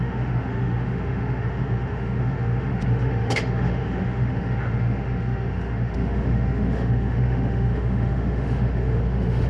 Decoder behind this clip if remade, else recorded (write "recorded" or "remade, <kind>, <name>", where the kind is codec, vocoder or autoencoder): remade, autoencoder, DAC-VAE